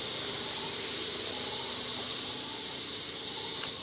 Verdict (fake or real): real